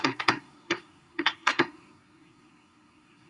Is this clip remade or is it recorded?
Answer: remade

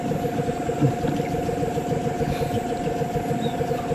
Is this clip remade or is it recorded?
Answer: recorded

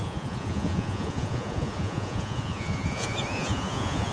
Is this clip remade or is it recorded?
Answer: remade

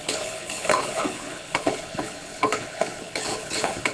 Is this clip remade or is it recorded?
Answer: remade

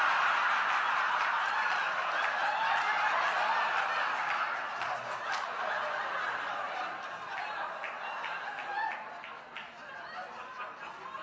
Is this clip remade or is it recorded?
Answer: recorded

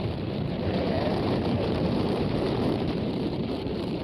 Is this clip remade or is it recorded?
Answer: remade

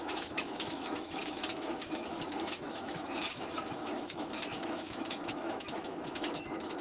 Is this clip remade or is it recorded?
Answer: remade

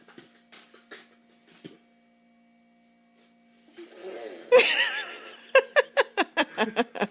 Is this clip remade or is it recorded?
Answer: recorded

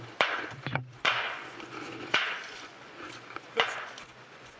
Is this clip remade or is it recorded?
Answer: remade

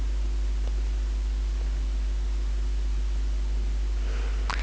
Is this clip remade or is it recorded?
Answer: recorded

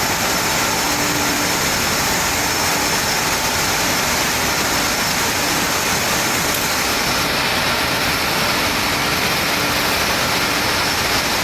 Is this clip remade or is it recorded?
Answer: recorded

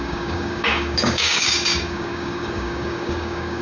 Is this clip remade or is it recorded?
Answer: remade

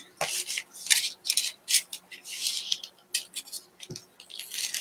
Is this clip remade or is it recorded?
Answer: recorded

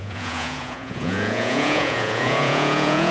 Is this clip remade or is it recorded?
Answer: remade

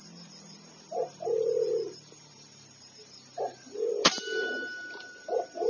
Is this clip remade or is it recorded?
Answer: remade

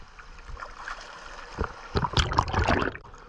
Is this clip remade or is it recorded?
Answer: recorded